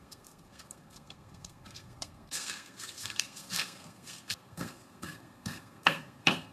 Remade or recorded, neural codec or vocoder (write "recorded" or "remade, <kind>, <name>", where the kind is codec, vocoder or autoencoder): remade, codec, SNAC